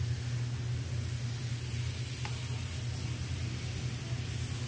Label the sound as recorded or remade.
recorded